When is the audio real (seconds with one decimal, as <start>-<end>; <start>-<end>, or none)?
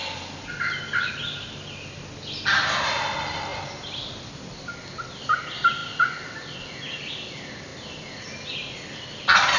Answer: 0.0-3.5; 4.1-9.6